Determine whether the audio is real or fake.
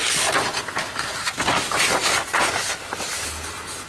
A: real